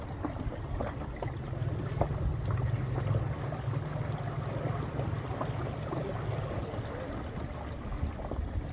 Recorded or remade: recorded